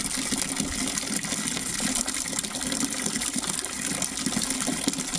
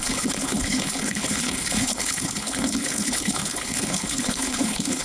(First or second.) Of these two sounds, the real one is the first